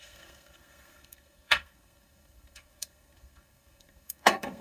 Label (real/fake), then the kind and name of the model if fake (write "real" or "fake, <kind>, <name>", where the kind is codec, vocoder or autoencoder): fake, codec, SNAC